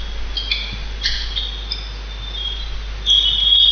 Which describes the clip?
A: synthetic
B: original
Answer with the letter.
B